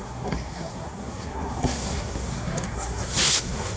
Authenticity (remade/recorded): remade